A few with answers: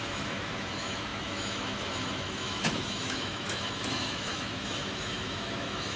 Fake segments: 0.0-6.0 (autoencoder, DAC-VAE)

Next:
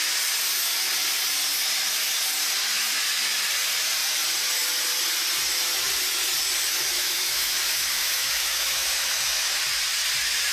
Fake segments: 6.9-9.6 (autoencoder, DAC-VAE)